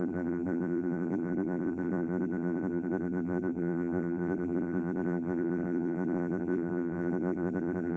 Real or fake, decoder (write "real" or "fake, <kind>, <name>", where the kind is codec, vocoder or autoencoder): fake, vocoder, BigVGAN v2